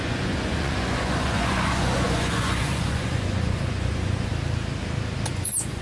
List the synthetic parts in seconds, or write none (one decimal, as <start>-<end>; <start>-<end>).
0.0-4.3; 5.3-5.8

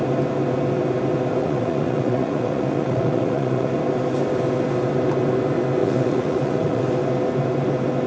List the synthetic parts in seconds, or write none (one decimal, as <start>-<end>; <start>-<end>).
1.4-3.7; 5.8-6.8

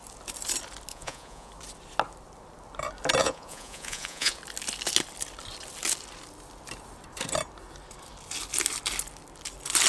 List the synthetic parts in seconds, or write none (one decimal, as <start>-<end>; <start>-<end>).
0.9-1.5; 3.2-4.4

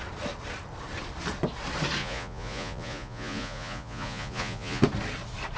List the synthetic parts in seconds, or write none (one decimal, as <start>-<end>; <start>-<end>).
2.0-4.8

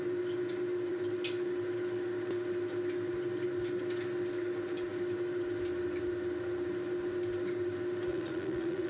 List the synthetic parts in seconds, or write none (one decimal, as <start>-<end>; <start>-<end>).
8.1-8.9

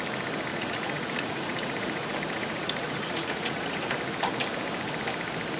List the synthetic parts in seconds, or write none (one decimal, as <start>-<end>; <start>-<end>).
0.5-3.9

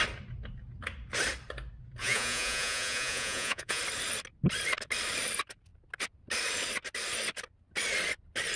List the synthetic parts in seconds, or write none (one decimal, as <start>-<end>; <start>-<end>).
2.0-3.8

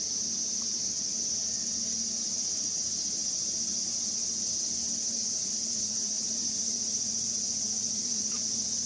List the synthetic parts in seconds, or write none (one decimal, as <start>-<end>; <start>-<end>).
5.3-8.9